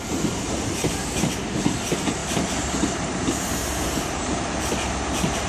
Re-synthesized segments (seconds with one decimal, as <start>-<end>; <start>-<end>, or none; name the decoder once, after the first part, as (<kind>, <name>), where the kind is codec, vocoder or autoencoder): 2.2-4.6 (vocoder, BigVGAN v2)